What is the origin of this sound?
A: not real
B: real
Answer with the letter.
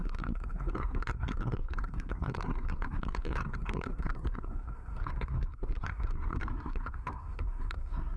A